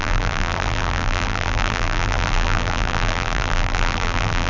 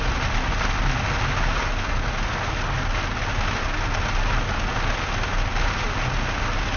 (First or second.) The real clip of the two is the second